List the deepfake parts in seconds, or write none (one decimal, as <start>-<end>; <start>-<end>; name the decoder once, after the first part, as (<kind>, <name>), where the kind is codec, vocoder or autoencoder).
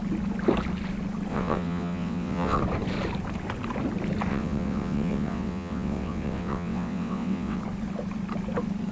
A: 1.3-2.6 (vocoder, WaveNeXt); 4.3-7.6